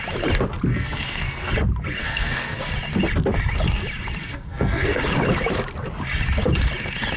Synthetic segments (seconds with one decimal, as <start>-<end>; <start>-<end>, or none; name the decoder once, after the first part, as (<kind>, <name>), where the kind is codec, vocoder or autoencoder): 0.7-1.5 (codec, SNAC); 2.0-2.7; 4.2-5.0